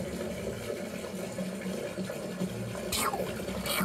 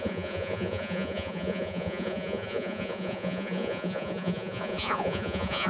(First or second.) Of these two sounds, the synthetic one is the second